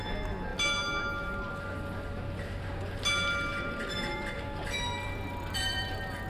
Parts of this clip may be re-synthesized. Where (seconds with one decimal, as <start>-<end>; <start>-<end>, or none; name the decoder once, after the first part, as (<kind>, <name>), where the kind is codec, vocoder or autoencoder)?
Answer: 3.5-6.3 (vocoder, BigVGAN v2)